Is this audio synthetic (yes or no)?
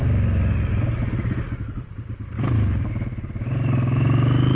no